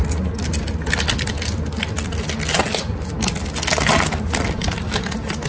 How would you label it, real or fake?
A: real